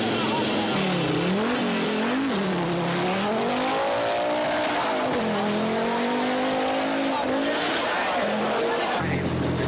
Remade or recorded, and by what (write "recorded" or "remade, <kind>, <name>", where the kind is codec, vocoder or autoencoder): recorded